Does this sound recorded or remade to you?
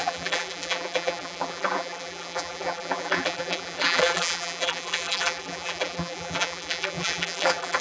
remade